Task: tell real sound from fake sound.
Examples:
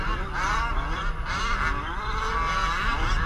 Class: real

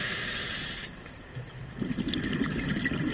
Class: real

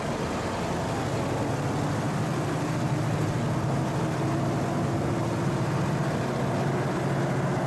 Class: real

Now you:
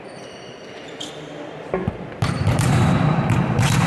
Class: real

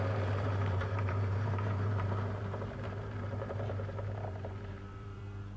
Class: fake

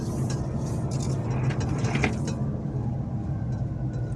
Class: real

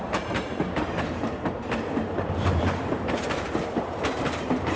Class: fake